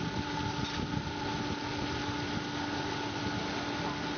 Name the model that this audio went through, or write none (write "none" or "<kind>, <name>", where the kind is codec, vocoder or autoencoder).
none